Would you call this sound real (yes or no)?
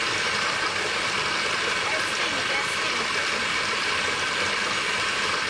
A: no